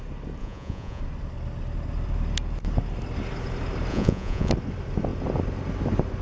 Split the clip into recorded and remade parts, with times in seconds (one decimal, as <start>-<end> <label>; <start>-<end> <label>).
0.0-0.4 recorded; 0.4-1.0 remade; 1.0-3.9 recorded; 3.9-4.5 remade; 4.5-6.2 recorded